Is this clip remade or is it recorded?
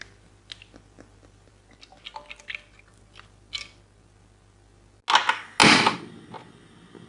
recorded